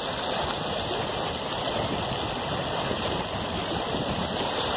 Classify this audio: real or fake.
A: real